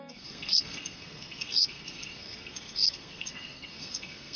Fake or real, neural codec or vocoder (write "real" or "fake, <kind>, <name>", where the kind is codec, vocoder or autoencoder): fake, codec, SNAC